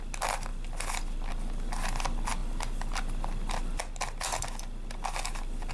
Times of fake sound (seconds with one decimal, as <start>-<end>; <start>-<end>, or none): none